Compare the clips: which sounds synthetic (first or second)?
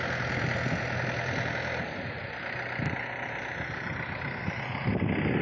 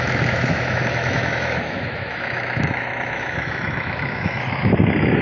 second